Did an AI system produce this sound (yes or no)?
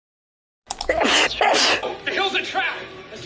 no